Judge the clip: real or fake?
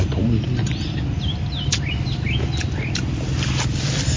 real